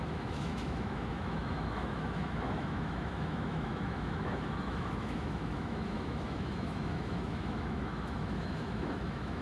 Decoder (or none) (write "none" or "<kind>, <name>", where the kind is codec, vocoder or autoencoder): autoencoder, DAC-VAE